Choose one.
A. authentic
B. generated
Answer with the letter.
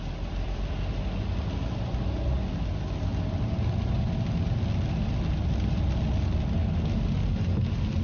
A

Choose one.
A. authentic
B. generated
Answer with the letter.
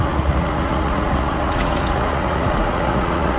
B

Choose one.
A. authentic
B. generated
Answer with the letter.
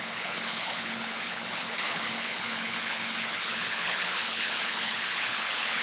B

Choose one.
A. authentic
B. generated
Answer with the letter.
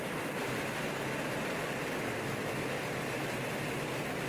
A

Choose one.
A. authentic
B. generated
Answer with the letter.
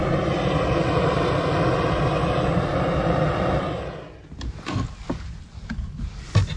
A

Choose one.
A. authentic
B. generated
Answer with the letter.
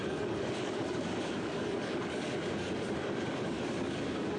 B